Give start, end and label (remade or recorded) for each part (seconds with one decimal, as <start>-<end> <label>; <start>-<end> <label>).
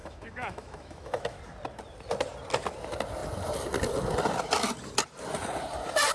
0.0-1.4 remade; 1.4-6.1 recorded